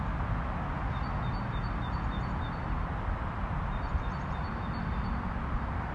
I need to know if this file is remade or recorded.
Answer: recorded